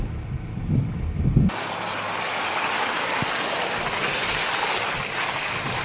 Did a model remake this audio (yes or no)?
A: no